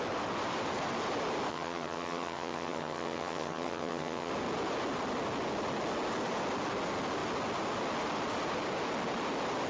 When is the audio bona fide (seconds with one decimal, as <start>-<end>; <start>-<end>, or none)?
0.0-1.5; 4.3-9.7